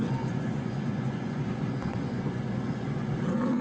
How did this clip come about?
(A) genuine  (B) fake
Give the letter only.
B